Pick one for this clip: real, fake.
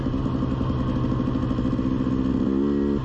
real